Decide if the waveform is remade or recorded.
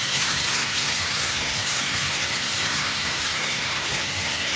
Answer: remade